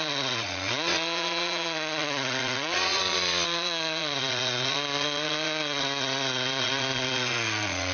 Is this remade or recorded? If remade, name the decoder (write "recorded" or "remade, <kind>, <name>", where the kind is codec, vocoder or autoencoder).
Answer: remade, vocoder, Vocos